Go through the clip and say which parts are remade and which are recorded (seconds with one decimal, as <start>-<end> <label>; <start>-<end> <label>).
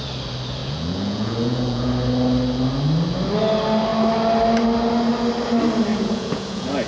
0.0-0.6 recorded; 0.6-1.9 remade; 1.9-5.9 recorded; 5.9-6.9 remade